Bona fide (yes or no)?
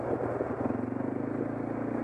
yes